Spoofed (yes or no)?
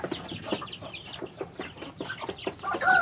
no